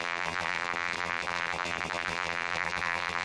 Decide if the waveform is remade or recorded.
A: remade